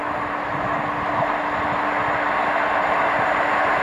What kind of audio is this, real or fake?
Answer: real